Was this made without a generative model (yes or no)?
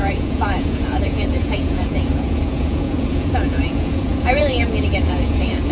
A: no